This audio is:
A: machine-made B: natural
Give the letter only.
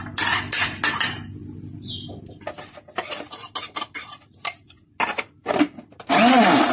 B